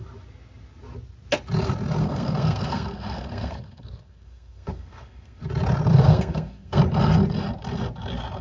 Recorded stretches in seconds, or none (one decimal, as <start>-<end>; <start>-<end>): 0.0-2.0; 5.4-5.9; 6.8-8.4